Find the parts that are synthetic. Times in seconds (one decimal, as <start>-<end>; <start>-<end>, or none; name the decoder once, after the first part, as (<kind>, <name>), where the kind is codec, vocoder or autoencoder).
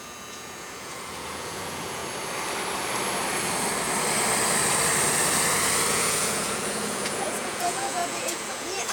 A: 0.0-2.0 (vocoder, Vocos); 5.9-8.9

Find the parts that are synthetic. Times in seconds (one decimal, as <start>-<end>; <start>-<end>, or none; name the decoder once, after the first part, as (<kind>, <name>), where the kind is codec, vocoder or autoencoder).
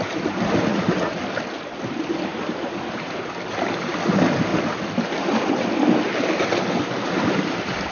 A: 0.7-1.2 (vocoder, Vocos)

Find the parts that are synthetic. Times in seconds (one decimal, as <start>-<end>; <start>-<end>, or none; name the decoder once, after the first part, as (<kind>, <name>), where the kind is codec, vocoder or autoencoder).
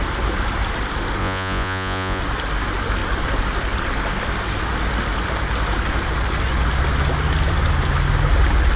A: 1.2-2.2 (vocoder, Vocos)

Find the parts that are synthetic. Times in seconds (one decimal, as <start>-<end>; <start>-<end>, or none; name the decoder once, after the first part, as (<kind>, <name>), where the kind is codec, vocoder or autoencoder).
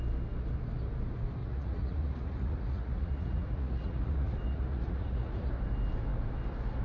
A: 1.4-5.5 (vocoder, Vocos)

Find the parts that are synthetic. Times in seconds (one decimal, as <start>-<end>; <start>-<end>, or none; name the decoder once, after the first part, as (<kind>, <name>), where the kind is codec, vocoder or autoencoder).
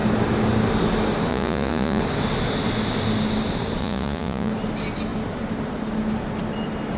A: 1.3-2.0 (vocoder, Vocos); 3.8-4.5